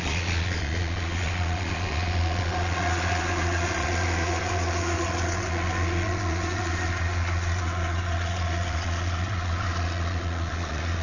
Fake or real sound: fake